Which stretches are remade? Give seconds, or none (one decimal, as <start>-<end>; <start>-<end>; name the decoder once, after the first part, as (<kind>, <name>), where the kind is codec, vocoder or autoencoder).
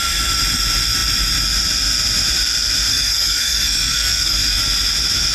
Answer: 2.9-4.6 (codec, SNAC)